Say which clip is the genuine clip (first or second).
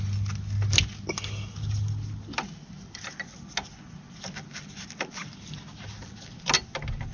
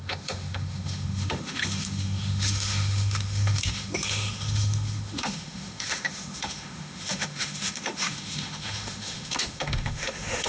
first